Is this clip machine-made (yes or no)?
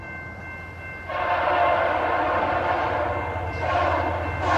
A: no